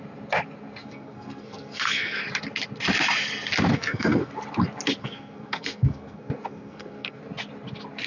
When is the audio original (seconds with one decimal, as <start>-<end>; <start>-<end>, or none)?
0.0-0.8; 2.2-3.7; 4.3-5.0; 7.2-8.1